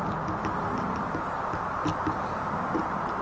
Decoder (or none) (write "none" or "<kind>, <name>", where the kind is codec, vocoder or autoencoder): none